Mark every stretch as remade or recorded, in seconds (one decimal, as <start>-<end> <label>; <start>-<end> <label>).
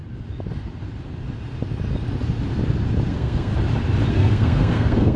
0.0-3.1 recorded; 3.1-3.5 remade; 3.5-4.1 recorded; 4.1-5.2 remade